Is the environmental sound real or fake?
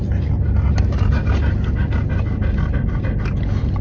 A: real